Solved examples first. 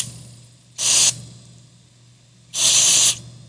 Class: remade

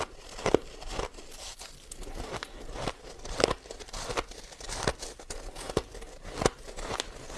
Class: recorded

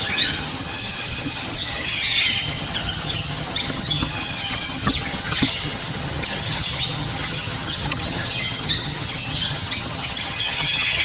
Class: remade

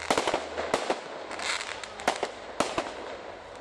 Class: recorded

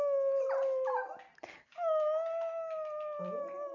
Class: recorded